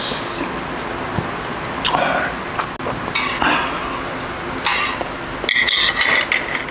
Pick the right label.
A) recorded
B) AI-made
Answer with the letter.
A